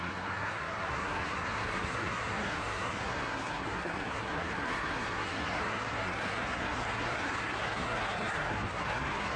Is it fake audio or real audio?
fake